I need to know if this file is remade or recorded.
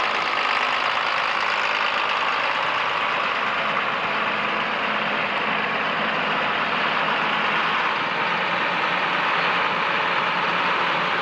recorded